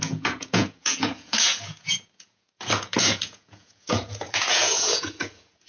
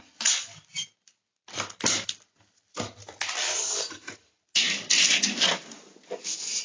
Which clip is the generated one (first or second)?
first